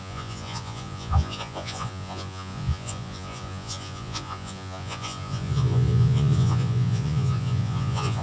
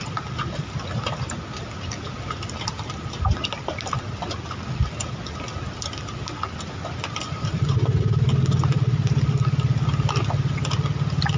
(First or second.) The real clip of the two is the second